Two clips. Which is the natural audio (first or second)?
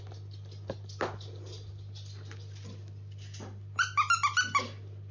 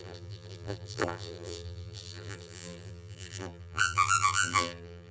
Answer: first